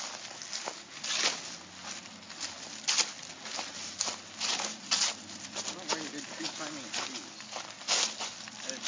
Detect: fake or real real